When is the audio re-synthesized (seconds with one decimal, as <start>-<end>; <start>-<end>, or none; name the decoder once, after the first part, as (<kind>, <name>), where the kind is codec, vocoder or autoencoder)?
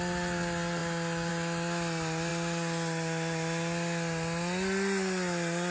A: none